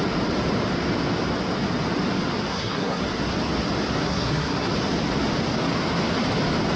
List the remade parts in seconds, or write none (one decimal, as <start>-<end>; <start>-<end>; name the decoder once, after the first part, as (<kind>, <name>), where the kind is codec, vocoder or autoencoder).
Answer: 2.5-3.0 (codec, SNAC); 4.0-4.7